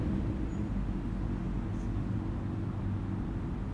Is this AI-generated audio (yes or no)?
no